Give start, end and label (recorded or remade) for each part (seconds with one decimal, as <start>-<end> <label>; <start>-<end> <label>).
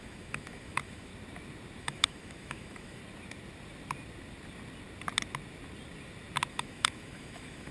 0.0-1.1 remade; 1.1-1.8 recorded; 1.8-3.0 remade; 3.0-6.5 recorded; 6.5-7.7 remade